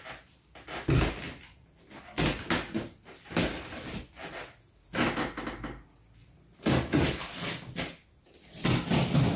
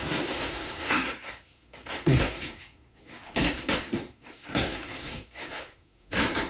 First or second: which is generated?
second